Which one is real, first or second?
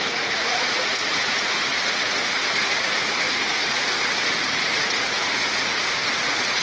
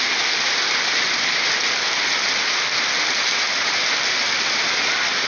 second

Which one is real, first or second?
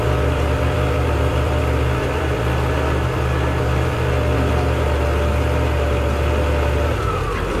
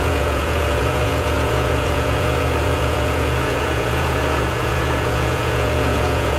first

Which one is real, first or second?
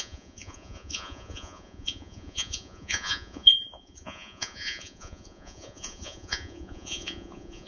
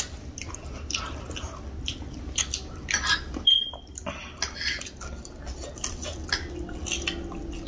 second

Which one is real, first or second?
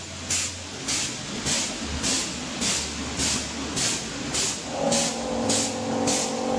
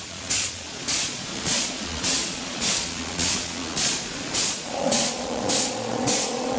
first